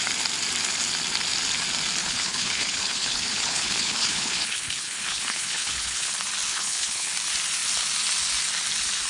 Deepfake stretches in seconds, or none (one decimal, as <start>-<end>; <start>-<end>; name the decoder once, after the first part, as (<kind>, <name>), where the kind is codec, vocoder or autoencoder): 2.0-6.1 (codec, HILCodec); 6.5-7.1